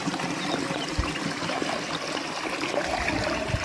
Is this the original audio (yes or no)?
yes